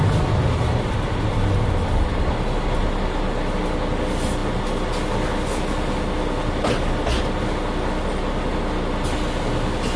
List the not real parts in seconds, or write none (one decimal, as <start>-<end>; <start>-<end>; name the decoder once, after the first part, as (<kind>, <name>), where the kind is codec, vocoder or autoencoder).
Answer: none